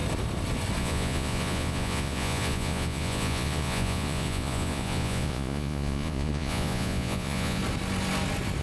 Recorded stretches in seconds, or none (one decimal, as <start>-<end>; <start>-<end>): 0.0-0.8; 7.6-8.6

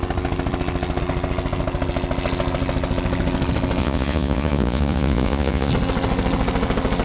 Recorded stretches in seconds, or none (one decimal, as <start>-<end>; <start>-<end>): 0.0-3.8; 5.7-7.0

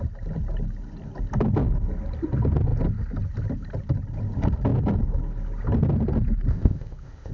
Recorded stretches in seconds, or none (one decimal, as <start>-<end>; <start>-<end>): 0.0-6.5

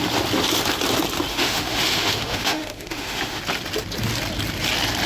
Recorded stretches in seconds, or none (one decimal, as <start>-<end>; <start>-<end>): 0.0-1.3; 3.4-5.1

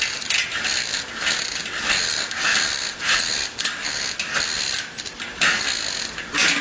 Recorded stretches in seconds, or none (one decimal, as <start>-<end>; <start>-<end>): 0.0-6.6

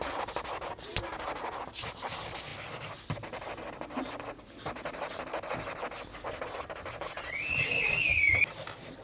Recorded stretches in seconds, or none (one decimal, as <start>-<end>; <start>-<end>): 0.0-9.0